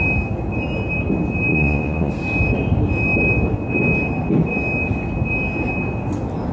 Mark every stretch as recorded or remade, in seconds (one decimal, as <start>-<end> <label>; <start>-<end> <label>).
0.0-1.5 recorded; 1.5-2.1 remade; 2.1-6.5 recorded